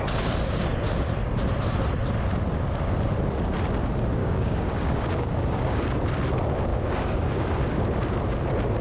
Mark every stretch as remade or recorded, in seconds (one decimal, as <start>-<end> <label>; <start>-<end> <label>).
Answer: 0.0-4.2 recorded; 4.2-5.8 remade; 5.8-6.7 recorded; 6.7-7.8 remade; 7.8-8.8 recorded